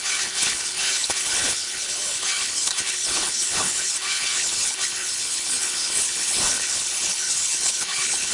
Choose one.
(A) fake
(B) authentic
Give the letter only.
A